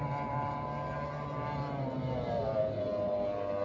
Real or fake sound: real